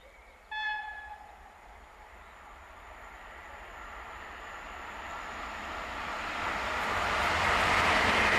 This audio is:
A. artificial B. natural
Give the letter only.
A